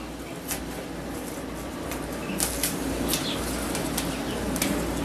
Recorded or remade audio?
recorded